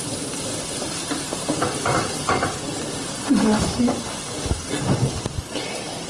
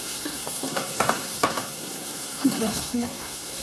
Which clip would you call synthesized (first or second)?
second